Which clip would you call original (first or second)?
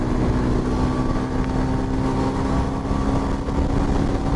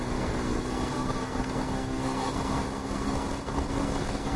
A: first